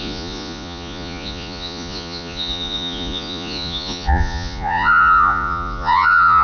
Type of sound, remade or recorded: remade